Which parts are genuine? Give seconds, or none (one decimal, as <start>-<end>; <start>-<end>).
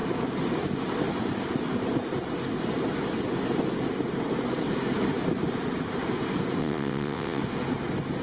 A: 0.0-6.6; 7.4-8.2